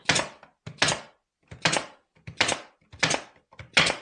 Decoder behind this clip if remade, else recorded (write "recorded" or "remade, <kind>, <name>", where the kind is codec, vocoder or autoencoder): recorded